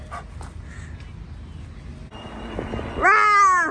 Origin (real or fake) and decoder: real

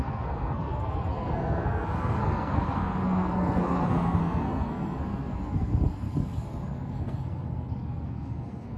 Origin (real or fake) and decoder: fake, codec, SNAC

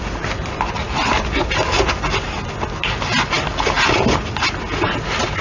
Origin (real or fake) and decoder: real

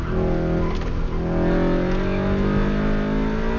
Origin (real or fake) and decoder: real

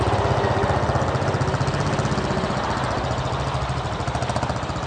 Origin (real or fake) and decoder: real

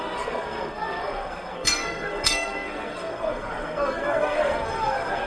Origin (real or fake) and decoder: fake, codec, SNAC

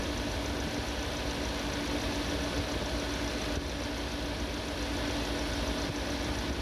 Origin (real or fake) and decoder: real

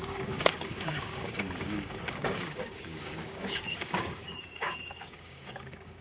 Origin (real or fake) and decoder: fake, codec, DAC